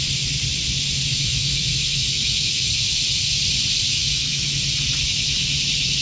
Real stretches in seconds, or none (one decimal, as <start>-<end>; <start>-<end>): 0.0-1.1; 2.7-3.9; 4.5-6.0